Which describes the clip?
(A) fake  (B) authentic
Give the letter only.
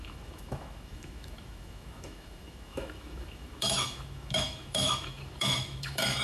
A